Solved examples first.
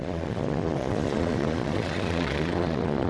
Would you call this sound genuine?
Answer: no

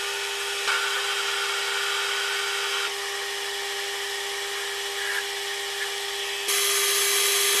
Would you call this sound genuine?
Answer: yes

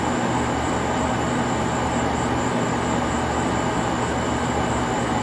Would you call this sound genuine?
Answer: yes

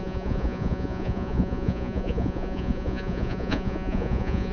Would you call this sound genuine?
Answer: no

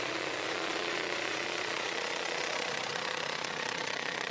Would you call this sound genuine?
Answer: no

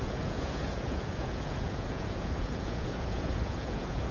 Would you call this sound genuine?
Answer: no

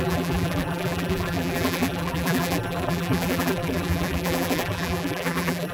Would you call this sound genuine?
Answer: no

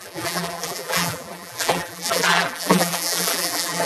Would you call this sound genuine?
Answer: no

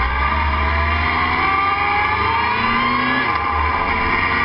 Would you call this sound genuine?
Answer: yes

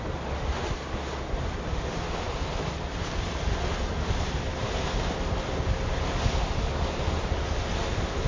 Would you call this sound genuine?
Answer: yes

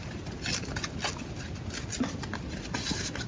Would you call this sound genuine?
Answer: yes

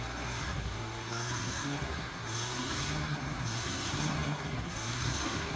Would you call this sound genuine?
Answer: no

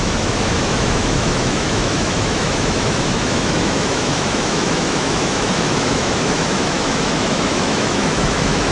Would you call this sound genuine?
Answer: no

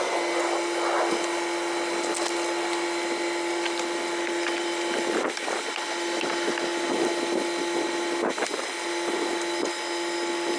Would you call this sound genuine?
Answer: yes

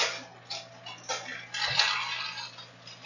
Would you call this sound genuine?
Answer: yes